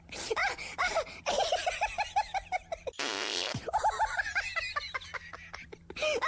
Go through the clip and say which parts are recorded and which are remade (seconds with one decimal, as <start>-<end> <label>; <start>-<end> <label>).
0.0-6.3 recorded